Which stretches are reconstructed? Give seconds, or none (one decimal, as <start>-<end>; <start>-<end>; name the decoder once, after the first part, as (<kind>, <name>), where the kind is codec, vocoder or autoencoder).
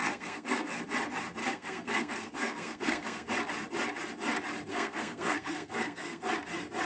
0.0-0.8 (codec, SNAC); 1.4-3.3; 4.7-6.3